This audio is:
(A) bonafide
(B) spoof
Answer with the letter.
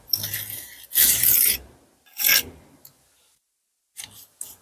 A